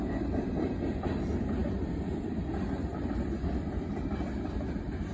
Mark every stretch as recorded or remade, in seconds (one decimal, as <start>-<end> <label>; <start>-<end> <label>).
0.0-5.1 recorded